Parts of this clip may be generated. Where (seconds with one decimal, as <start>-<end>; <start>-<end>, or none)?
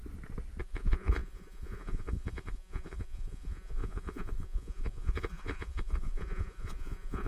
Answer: 0.6-7.3